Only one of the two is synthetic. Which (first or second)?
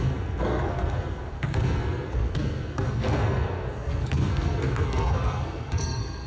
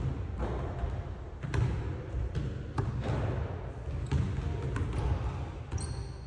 first